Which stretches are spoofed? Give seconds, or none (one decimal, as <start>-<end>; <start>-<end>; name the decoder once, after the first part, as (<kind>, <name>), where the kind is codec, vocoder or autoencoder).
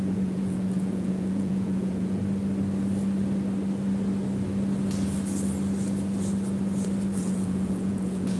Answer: 0.0-2.2 (vocoder, Vocos); 7.2-8.4